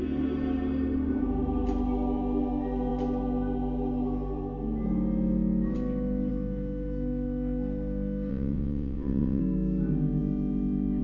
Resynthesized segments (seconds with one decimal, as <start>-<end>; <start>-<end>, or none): 8.3-9.4